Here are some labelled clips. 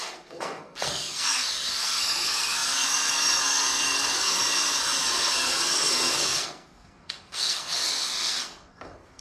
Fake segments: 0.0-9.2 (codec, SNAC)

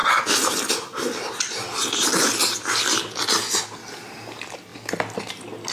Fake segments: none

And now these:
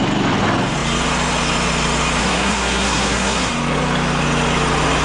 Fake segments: 2.2-3.5 (codec, SNAC)

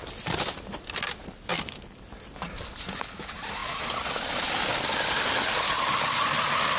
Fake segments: none

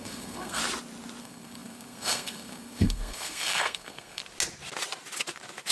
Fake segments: 0.0-0.6 (codec, SNAC); 1.2-4.2

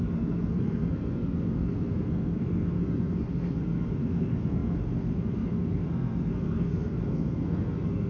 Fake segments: 0.0-8.1 (codec, SNAC)

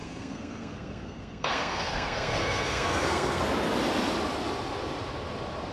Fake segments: 0.0-3.4 (codec, SNAC)

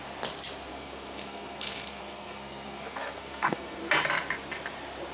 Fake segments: 0.7-3.8 (codec, SNAC)